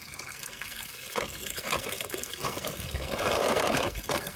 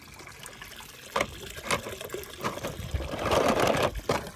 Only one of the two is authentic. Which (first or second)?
second